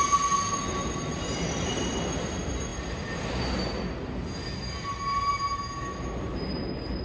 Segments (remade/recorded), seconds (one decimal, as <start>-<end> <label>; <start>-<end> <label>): 0.0-7.0 recorded